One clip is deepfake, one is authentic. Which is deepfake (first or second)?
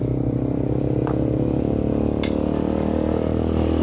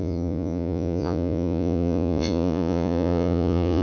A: second